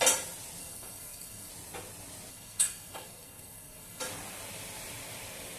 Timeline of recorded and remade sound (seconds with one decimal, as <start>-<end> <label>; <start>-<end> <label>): 0.0-0.6 recorded; 0.6-1.5 remade; 1.5-2.3 recorded; 2.3-4.0 remade; 4.0-5.6 recorded